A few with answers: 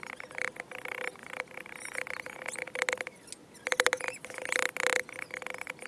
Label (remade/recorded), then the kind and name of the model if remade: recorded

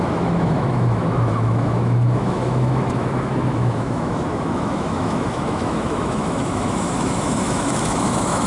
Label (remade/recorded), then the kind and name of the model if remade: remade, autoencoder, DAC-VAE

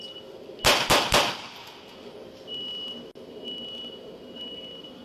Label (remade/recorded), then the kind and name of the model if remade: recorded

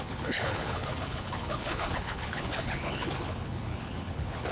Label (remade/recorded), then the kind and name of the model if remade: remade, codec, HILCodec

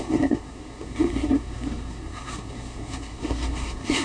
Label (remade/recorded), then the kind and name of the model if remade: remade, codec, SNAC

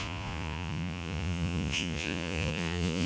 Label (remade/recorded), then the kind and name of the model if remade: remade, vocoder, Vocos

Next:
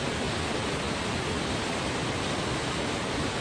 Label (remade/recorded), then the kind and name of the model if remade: recorded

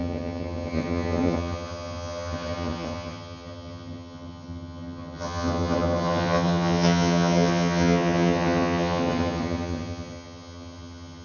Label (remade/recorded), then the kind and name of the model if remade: remade, vocoder, HiFi-GAN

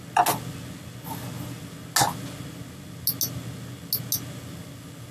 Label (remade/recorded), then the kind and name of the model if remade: recorded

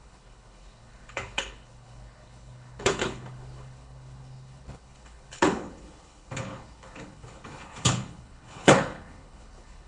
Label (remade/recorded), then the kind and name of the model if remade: remade, codec, HILCodec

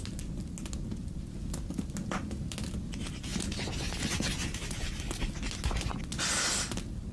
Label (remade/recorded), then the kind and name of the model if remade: recorded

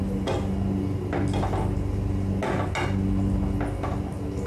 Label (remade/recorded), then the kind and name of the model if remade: recorded